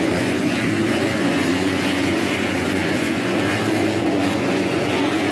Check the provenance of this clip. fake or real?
fake